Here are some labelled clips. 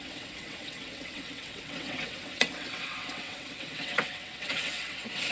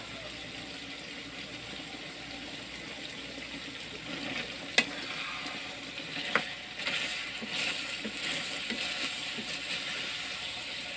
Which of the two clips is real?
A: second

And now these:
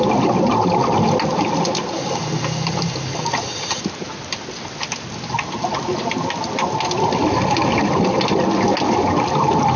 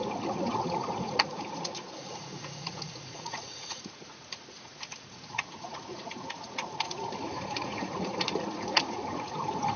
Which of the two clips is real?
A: first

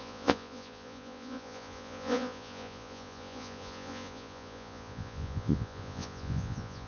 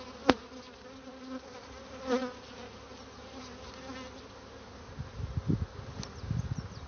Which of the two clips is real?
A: second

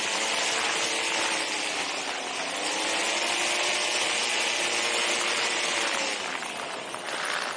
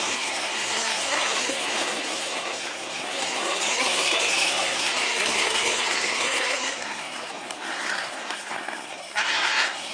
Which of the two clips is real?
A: first